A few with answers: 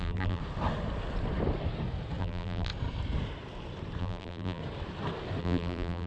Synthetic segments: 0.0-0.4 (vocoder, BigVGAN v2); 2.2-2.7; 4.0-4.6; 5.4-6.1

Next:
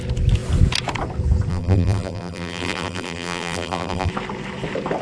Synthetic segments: 1.5-4.1 (vocoder, BigVGAN v2)

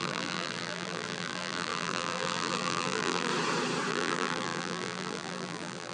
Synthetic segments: 0.0-3.3 (vocoder, BigVGAN v2); 3.9-5.9

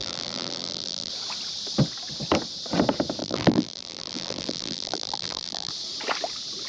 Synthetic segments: 0.0-1.1 (vocoder, BigVGAN v2); 3.2-5.7

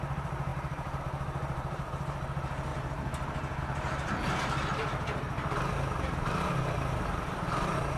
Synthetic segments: 0.0-2.7 (vocoder, BigVGAN v2); 3.6-8.0

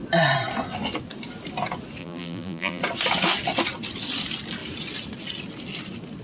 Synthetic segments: 2.0-2.8 (vocoder, BigVGAN v2)

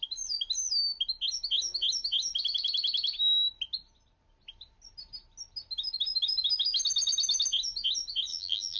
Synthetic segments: 8.3-8.8 (vocoder, BigVGAN v2)

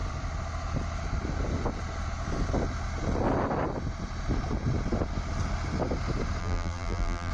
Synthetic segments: 6.4-7.3 (vocoder, BigVGAN v2)